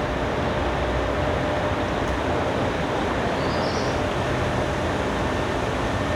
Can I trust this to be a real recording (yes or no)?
yes